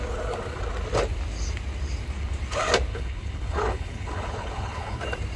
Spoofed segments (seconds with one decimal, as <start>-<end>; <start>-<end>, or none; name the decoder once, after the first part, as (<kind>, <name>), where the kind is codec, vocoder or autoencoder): 2.9-5.0 (codec, HILCodec)